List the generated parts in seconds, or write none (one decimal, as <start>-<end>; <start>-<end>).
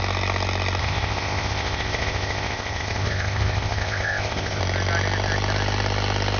0.8-4.6